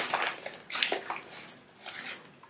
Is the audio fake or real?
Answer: real